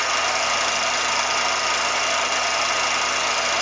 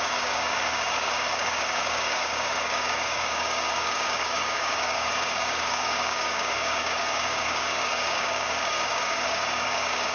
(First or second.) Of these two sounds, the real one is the first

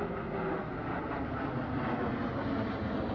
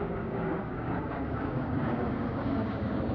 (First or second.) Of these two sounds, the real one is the first